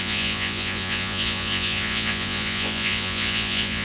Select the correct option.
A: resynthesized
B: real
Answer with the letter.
A